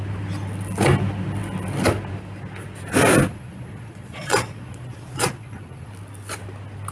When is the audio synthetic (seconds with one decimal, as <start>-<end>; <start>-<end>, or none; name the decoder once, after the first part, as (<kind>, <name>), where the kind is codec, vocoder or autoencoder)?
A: 3.3-5.9 (vocoder, Vocos)